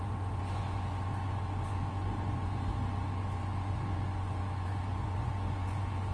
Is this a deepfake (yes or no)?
yes